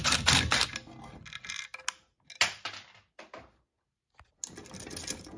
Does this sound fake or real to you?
real